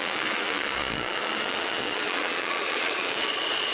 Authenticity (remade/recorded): remade